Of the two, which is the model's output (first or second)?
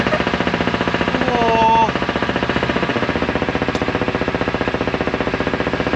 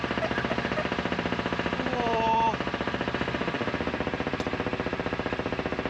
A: second